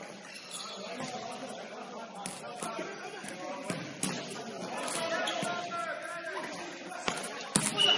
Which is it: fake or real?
real